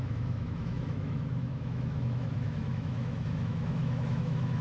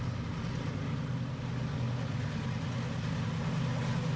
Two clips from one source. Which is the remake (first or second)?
first